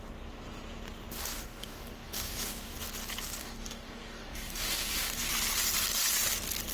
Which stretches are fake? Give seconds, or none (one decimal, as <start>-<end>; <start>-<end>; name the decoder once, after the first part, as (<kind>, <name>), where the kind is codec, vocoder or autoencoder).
1.2-2.8 (codec, DAC); 3.4-5.3